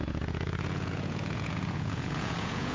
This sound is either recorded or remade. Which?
remade